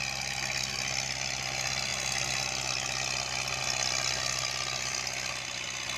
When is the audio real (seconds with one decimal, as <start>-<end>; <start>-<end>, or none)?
0.0-6.0